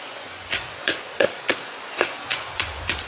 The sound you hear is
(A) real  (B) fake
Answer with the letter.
B